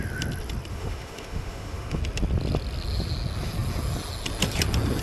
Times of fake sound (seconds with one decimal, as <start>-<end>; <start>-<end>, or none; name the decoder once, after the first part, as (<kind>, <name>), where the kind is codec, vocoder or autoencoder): 0.7-2.0 (autoencoder, DAC-VAE)